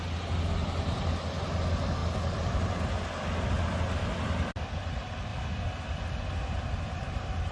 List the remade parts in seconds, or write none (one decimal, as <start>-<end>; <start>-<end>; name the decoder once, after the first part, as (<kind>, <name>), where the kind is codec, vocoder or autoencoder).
none